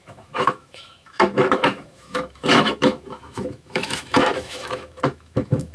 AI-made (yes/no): yes